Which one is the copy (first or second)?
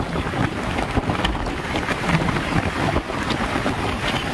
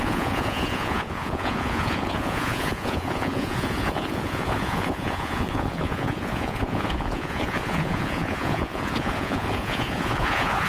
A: second